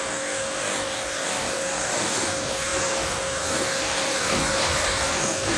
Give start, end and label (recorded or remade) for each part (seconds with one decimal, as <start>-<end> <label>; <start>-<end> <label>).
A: 0.0-5.6 remade